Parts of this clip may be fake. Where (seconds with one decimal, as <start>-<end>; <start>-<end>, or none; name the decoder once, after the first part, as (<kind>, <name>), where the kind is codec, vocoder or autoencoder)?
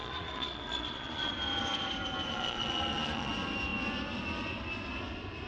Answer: 0.0-1.3 (vocoder, Vocos); 2.3-3.3